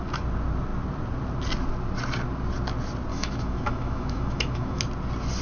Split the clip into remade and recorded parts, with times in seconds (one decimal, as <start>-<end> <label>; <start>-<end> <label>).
0.0-3.1 recorded; 3.1-4.8 remade; 4.8-5.4 recorded